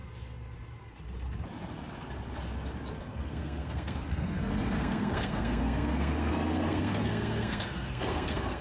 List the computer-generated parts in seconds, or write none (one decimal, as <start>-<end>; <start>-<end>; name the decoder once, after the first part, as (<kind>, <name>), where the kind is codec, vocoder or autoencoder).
3.0-8.6 (codec, SNAC)